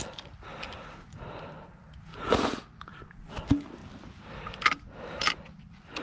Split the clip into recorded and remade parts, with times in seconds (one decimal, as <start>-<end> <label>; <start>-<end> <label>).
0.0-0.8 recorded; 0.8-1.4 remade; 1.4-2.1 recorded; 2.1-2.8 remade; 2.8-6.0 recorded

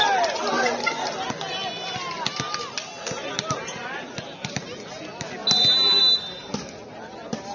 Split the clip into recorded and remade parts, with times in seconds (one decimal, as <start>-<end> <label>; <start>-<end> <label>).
0.0-7.5 recorded

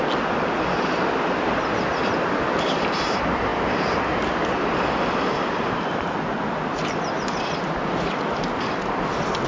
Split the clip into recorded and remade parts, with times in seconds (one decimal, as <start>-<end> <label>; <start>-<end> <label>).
0.0-9.5 recorded

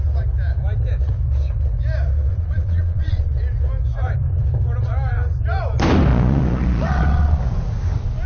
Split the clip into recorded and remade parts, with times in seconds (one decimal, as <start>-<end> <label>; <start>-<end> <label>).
0.0-2.3 recorded; 2.3-3.3 remade; 3.3-6.1 recorded; 6.1-7.4 remade; 7.4-8.3 recorded